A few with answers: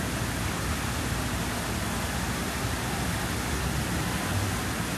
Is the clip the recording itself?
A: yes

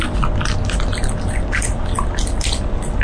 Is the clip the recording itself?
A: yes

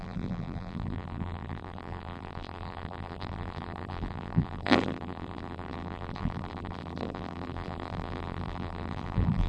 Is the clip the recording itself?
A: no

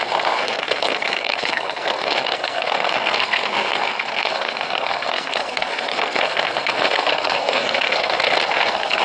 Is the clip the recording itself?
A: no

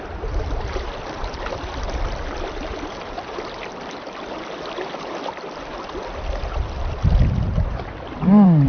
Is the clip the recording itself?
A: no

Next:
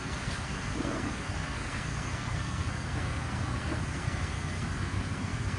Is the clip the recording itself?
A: no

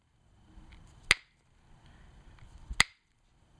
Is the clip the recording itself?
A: yes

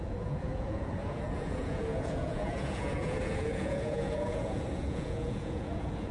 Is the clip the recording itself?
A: no